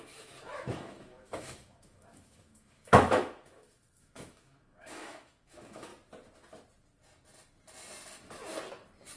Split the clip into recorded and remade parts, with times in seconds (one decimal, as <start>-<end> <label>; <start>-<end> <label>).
0.0-5.9 remade; 5.9-9.2 recorded